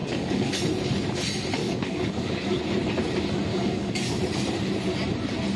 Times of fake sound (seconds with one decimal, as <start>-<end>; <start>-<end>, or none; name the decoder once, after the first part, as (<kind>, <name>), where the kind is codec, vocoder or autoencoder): 0.0-0.6 (codec, DAC); 1.6-2.6; 3.5-4.2